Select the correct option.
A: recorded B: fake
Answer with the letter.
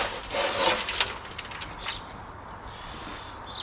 A